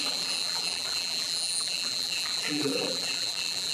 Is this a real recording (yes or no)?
no